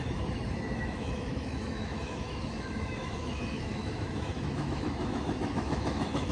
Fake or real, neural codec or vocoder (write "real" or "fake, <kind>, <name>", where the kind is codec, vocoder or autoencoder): fake, autoencoder, DAC-VAE